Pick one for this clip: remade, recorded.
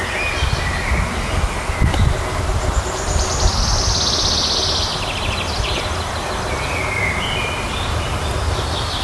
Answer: recorded